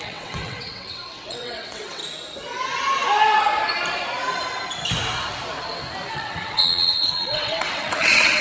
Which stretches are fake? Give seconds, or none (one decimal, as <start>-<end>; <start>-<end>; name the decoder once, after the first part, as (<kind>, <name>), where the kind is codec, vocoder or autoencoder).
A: 0.0-2.0 (vocoder, WaveNeXt); 6.1-8.4

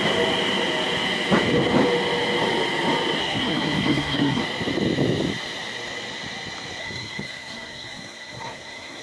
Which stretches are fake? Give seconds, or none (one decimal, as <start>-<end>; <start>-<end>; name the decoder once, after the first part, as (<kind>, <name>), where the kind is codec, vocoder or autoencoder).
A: 3.2-4.4 (codec, SNAC); 6.8-9.0

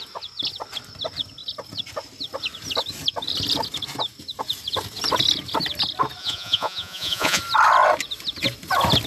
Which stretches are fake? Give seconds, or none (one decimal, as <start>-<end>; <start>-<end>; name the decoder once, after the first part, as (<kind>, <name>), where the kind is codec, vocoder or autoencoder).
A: 6.2-7.4 (vocoder, Vocos)

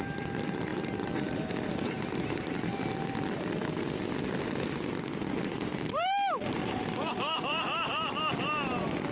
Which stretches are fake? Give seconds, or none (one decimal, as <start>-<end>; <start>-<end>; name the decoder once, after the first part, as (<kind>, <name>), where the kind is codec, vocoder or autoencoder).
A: 0.0-2.7 (vocoder, BigVGAN v2); 5.3-9.1

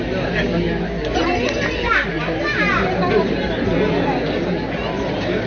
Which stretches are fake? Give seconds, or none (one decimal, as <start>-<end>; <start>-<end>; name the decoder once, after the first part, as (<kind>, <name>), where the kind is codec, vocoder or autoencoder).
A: none